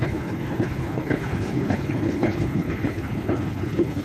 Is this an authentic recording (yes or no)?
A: no